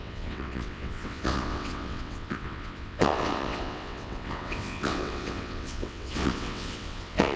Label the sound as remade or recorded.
remade